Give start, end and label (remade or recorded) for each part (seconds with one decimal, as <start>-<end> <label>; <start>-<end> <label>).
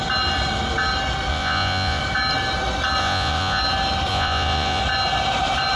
0.0-1.3 recorded; 1.3-2.0 remade; 2.0-3.0 recorded; 3.0-3.6 remade; 3.6-4.1 recorded; 4.1-4.8 remade; 4.8-5.8 recorded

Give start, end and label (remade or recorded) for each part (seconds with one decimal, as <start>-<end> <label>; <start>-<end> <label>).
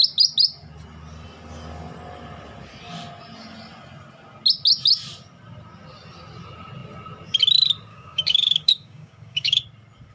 0.0-7.9 recorded; 7.9-9.6 remade; 9.6-10.1 recorded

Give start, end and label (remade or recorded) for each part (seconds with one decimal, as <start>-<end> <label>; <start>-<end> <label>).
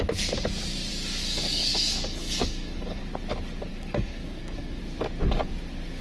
0.0-0.9 recorded; 0.9-3.0 remade; 3.0-3.7 recorded; 3.7-4.8 remade; 4.8-6.0 recorded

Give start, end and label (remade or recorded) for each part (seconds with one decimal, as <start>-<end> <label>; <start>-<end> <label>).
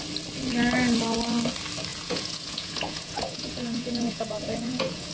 0.0-1.9 recorded; 1.9-5.1 remade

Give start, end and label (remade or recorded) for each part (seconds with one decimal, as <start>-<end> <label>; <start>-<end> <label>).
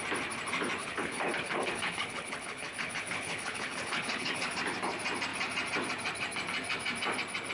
0.0-0.8 recorded; 0.8-4.5 remade; 4.5-7.5 recorded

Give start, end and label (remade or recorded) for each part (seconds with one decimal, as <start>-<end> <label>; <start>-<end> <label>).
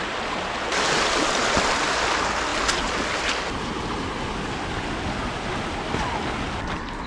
0.0-7.1 recorded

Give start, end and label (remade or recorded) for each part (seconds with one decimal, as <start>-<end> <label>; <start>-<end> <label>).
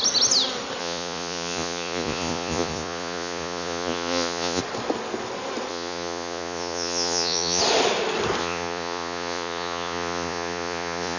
0.0-0.8 recorded; 0.8-4.6 remade; 4.6-5.7 recorded; 5.7-7.6 remade; 7.6-8.4 recorded; 8.4-11.2 remade